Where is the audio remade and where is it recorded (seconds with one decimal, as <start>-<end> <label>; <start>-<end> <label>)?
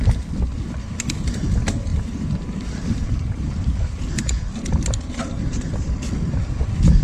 0.0-1.9 recorded; 1.9-6.1 remade; 6.1-7.0 recorded